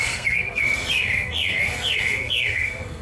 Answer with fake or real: fake